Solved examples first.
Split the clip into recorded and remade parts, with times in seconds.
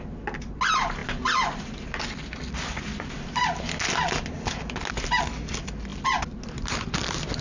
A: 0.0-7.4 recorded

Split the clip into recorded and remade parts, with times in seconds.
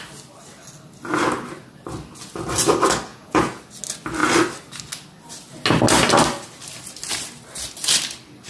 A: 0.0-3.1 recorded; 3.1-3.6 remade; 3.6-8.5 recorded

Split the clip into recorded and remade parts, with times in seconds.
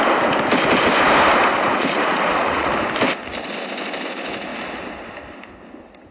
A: 0.0-1.5 recorded; 1.5-2.7 remade; 2.7-6.1 recorded